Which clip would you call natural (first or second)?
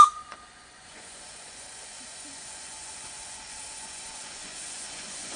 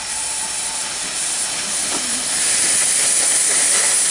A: second